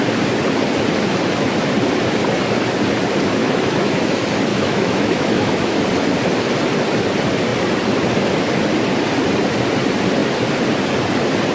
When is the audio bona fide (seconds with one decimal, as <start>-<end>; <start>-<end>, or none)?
0.0-3.4; 4.0-4.5; 5.8-11.5